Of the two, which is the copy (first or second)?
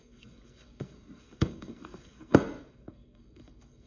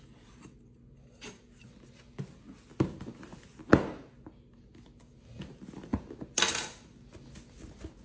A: first